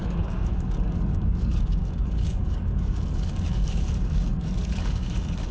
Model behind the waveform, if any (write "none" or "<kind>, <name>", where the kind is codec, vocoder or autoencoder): codec, DAC